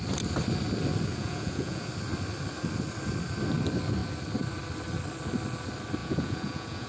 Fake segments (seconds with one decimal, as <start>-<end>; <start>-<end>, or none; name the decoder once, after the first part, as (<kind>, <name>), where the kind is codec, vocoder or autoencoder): 1.1-1.9 (vocoder, Vocos); 6.0-6.9